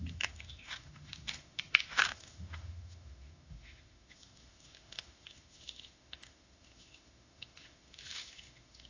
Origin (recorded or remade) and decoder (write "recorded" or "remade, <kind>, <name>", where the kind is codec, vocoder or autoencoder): remade, autoencoder, DAC-VAE